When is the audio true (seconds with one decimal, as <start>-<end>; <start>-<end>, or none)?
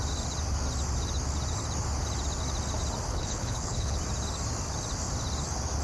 0.0-3.1; 4.0-5.8